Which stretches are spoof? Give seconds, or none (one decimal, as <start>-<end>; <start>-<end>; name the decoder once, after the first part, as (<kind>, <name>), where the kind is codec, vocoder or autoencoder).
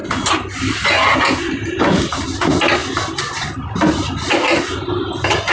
none